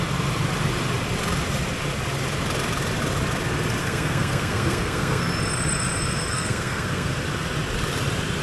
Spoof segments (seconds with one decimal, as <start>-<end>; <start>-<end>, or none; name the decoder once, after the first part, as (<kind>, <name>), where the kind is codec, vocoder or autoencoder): 3.8-5.2 (codec, SNAC); 6.3-7.1